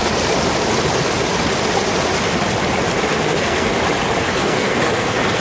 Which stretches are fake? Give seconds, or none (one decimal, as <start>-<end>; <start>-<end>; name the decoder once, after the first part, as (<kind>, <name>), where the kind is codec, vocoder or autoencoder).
3.2-3.7 (codec, SNAC); 4.2-5.4